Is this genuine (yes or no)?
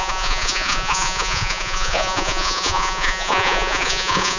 no